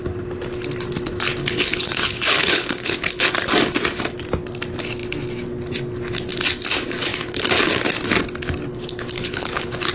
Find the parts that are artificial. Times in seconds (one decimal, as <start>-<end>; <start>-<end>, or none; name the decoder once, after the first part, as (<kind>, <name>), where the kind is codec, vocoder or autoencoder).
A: 1.4-3.3 (codec, HILCodec); 7.1-7.8; 8.7-9.9